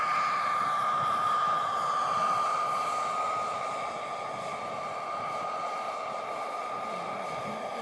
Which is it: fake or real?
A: real